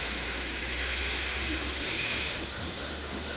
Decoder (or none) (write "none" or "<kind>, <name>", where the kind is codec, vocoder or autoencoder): autoencoder, DAC-VAE